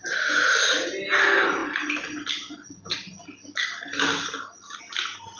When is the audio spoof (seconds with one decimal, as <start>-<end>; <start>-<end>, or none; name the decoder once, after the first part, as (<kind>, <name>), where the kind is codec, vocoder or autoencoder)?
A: none